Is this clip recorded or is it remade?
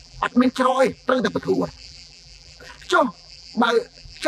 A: remade